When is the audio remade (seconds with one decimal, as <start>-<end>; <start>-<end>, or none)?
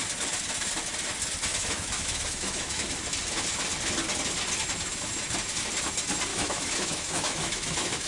1.5-3.0; 6.3-8.1